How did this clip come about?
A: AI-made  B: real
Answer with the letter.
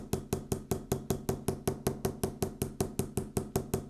B